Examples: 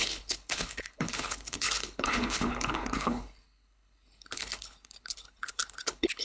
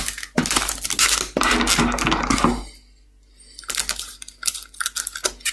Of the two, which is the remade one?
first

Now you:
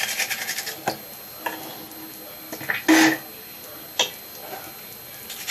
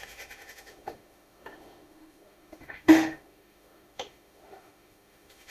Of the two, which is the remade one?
second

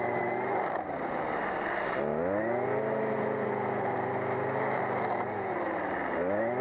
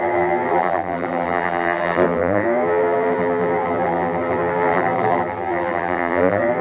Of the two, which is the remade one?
second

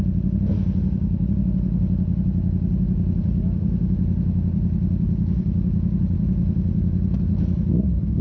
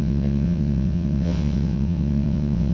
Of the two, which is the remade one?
second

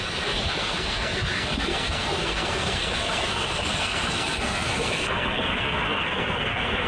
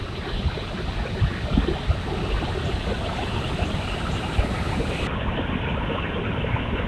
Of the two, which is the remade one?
first